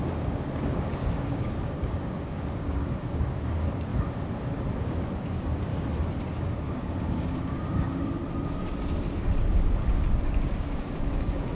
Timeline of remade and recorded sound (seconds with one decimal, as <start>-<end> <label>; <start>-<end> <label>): 0.0-3.9 remade; 3.9-4.7 recorded; 4.7-5.7 remade; 5.7-6.3 recorded; 6.3-8.2 remade; 8.2-9.4 recorded; 9.4-11.5 remade